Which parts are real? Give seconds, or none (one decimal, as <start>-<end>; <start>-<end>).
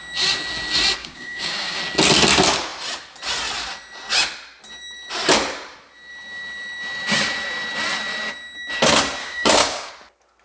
0.0-1.0; 1.8-9.2; 9.9-10.4